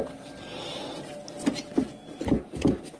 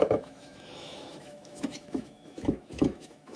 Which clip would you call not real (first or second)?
second